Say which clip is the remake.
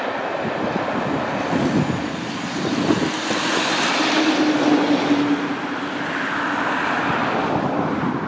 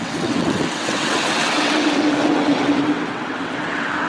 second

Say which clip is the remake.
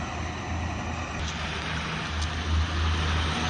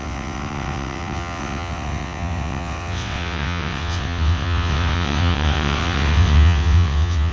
second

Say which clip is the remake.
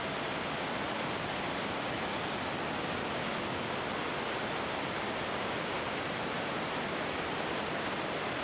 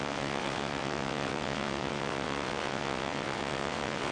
second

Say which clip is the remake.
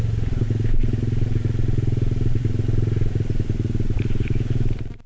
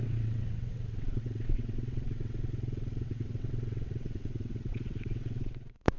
second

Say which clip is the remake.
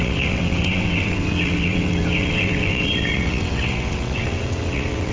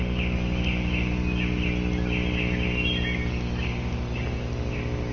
first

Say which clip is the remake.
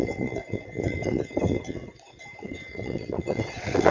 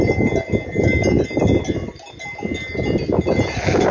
first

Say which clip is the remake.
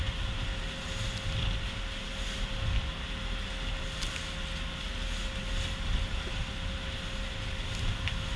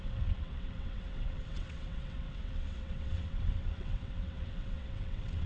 second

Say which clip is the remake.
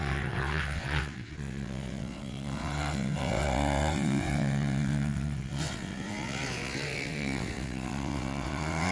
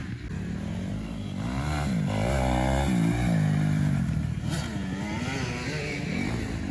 first